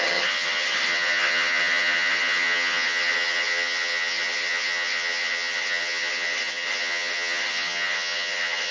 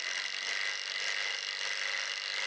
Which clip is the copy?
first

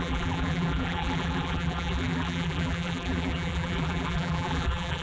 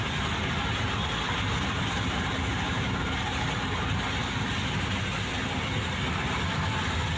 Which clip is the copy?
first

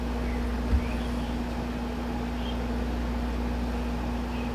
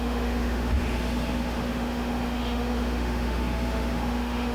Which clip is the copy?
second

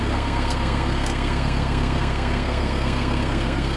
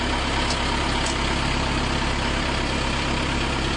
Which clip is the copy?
first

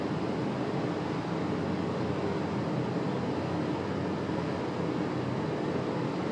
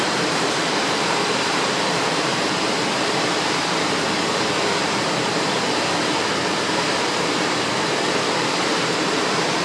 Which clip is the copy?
second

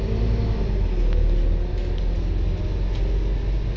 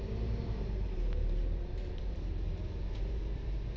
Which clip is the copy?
second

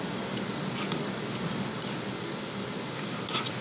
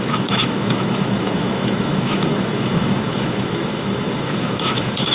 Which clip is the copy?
second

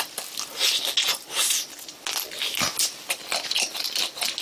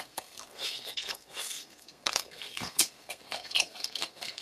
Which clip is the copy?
second